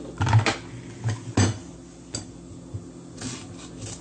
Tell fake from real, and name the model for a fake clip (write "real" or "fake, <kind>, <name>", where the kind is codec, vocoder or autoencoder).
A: real